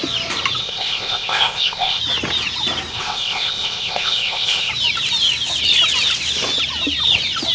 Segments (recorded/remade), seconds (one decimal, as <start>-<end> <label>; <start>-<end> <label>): 0.0-0.6 recorded; 0.6-2.0 remade; 2.0-2.9 recorded; 2.9-4.7 remade; 4.7-7.5 recorded